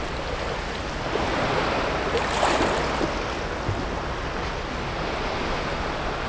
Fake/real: real